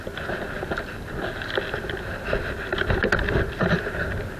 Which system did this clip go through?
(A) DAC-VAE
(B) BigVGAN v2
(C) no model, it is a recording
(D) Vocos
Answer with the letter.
C